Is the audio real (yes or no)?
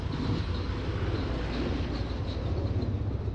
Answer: yes